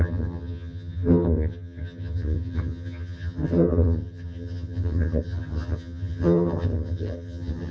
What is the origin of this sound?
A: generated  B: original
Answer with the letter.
A